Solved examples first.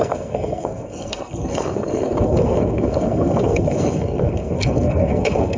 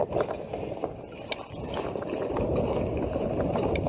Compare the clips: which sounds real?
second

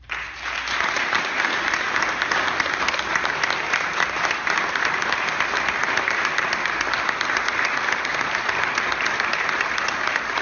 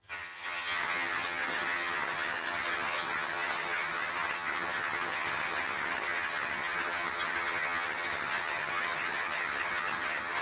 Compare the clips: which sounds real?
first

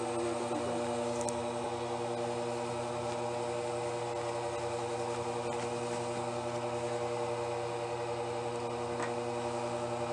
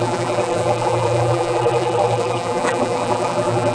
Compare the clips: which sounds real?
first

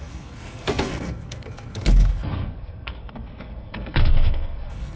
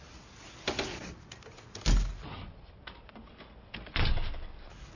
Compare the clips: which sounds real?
second